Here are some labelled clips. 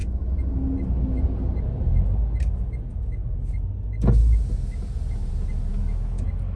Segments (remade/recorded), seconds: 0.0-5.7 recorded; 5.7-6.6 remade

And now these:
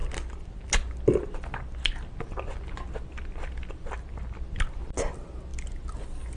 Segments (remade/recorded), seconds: 0.0-6.4 recorded

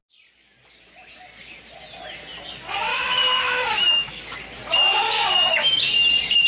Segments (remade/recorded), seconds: 0.0-2.9 recorded; 2.9-4.2 remade; 4.2-5.0 recorded; 5.0-5.9 remade; 5.9-6.5 recorded